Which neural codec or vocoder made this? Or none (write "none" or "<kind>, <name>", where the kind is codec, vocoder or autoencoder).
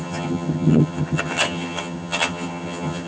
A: vocoder, HiFi-GAN